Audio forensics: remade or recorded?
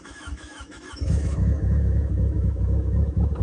remade